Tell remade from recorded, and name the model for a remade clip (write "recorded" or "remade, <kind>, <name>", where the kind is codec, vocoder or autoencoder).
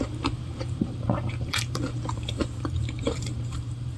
remade, vocoder, BigVGAN v2